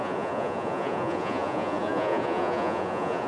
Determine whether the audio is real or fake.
fake